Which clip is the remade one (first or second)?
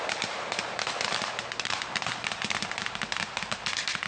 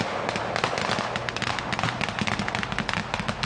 first